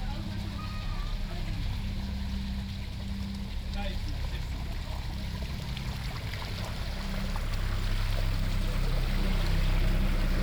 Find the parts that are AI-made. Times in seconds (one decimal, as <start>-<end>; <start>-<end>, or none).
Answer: none